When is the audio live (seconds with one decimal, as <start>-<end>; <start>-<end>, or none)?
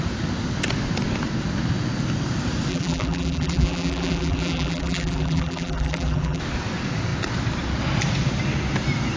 0.0-2.7; 6.4-9.2